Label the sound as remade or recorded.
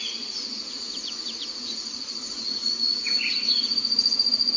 remade